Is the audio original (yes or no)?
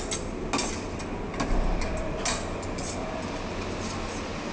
yes